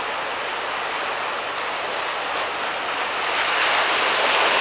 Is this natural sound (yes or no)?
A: yes